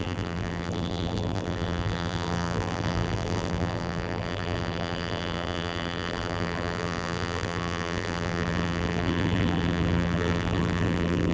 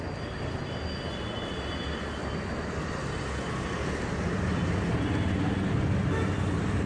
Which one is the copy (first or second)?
first